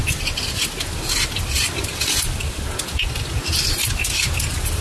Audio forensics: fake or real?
real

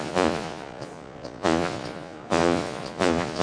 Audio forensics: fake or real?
fake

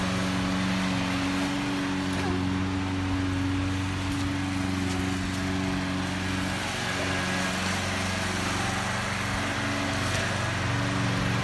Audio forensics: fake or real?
real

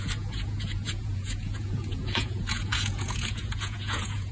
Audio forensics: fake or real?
fake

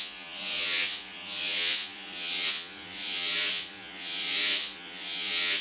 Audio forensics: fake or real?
fake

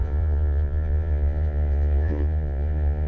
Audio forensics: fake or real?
fake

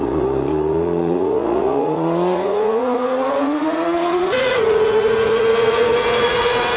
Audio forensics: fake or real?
fake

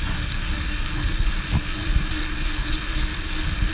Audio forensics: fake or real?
real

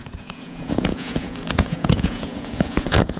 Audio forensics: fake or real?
fake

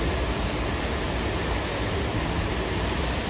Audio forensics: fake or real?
real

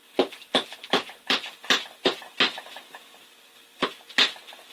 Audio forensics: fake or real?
real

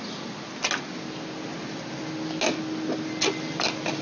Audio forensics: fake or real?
real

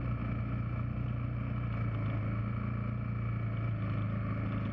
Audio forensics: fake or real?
real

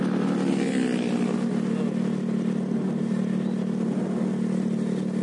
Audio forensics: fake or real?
real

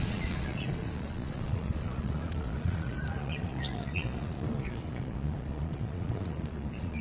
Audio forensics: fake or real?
fake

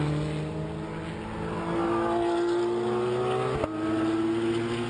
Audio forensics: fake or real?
real